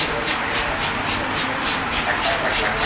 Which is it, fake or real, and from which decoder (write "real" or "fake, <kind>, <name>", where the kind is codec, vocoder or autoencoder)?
real